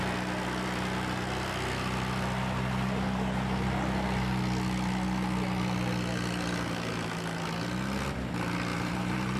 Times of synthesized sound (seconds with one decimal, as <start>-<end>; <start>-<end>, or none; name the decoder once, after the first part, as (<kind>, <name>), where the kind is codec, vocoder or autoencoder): 8.7-9.4 (vocoder, BigVGAN v2)